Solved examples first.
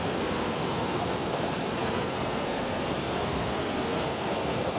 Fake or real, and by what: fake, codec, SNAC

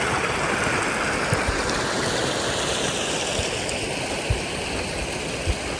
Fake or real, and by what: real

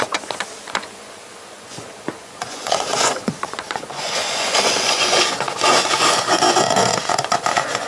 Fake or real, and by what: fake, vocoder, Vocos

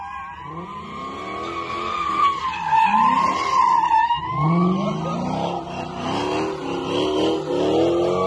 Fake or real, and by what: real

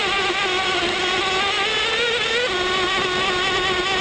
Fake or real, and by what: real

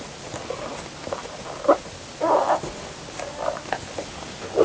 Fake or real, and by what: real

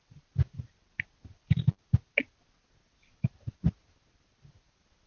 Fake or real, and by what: real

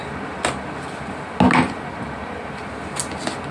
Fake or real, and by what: real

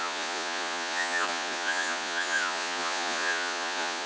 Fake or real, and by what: fake, vocoder, Vocos